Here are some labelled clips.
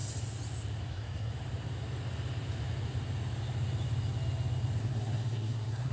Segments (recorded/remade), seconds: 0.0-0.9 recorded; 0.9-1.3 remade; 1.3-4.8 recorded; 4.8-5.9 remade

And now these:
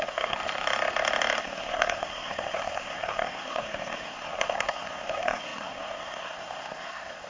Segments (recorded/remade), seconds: 0.0-0.4 remade; 0.4-1.4 recorded; 1.4-7.3 remade